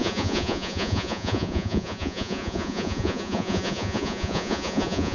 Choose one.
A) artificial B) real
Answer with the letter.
A